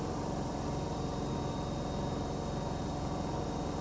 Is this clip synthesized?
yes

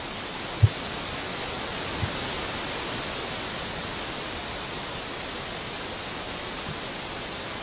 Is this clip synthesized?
no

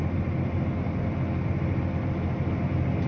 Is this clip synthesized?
no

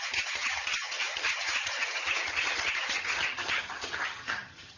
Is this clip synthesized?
yes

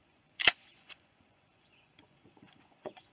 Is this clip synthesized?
yes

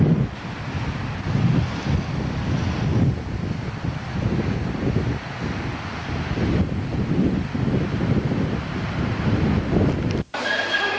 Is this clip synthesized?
no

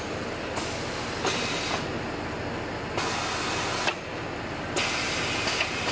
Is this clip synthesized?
no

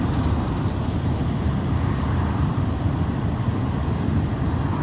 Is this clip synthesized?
no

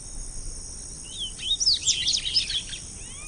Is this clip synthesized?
no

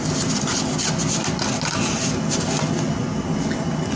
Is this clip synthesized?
no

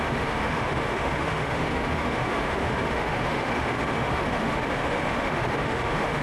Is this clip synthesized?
yes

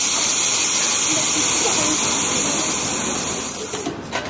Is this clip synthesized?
no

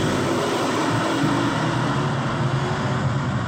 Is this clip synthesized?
no